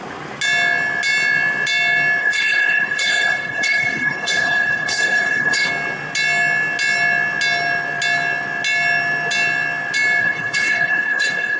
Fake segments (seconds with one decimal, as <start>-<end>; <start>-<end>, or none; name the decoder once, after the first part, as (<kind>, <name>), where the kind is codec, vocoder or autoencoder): 2.2-5.7 (codec, HILCodec); 10.2-11.6

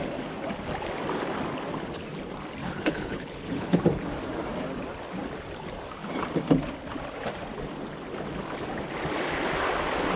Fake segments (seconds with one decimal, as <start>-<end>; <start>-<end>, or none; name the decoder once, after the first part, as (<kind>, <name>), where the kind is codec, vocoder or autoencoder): 2.6-3.8 (codec, HILCodec)

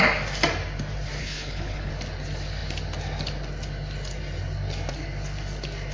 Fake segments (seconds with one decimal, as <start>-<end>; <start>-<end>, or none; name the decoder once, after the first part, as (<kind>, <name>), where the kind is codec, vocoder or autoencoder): 1.2-1.9 (codec, HILCodec)